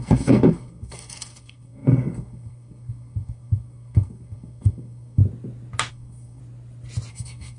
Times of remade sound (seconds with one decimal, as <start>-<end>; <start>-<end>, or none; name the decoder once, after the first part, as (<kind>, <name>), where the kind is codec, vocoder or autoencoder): 0.0-5.2 (codec, SNAC); 5.9-6.4; 7.1-7.6